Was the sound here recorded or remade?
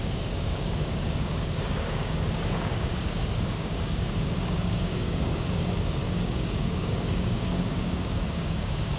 remade